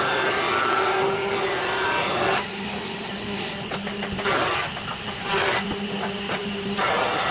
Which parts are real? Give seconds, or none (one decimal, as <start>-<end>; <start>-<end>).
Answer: 0.0-7.3